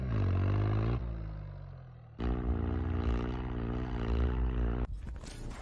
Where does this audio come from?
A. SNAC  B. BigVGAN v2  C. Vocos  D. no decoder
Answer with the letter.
D